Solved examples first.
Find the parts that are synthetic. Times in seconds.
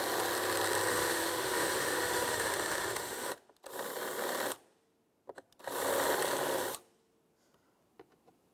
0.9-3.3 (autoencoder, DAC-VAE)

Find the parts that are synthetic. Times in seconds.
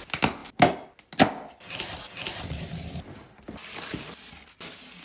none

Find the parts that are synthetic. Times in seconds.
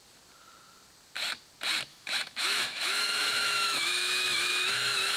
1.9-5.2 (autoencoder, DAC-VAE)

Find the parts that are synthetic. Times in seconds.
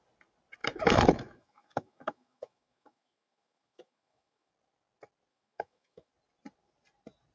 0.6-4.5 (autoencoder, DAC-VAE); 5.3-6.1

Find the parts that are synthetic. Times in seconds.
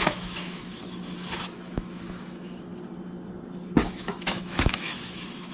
0.0-0.8 (autoencoder, DAC-VAE); 1.4-2.7; 3.9-5.5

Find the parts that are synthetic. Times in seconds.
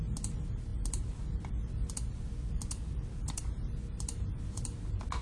none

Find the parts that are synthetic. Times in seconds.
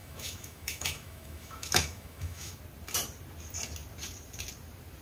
0.0-2.6 (autoencoder, DAC-VAE)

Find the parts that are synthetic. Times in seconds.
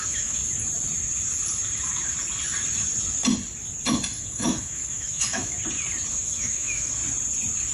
0.0-0.4 (autoencoder, DAC-VAE); 4.2-5.6; 6.1-7.0